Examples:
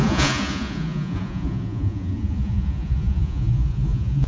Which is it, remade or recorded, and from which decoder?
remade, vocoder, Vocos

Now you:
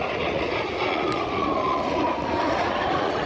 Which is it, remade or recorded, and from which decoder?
remade, vocoder, Vocos